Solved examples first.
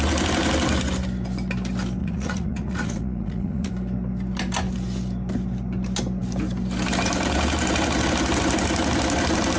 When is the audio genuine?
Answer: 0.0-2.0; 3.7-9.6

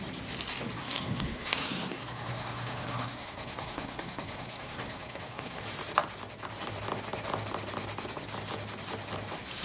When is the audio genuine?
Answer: 0.0-0.8; 5.6-9.6

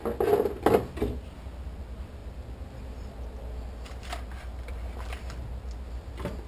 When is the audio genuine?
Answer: 0.0-6.5